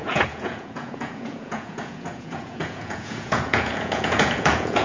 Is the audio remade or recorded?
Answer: remade